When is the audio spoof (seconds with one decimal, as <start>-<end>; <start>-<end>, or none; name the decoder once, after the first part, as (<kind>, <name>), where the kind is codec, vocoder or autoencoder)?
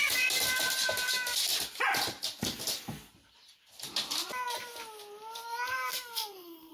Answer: 5.9-6.7 (codec, SNAC)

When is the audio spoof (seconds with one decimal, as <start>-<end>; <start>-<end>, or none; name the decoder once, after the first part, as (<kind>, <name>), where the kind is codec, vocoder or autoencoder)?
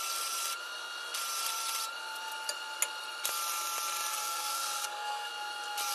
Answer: 4.1-5.3 (codec, SNAC)